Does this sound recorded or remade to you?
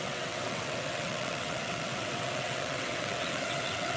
remade